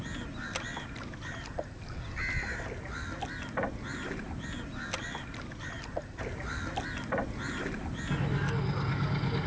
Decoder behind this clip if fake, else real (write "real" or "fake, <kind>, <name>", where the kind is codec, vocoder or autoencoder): real